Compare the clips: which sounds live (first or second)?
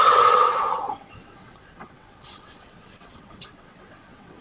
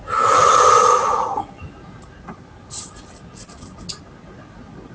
second